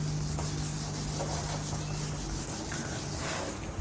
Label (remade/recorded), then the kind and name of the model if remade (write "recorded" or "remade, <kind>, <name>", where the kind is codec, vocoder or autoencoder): recorded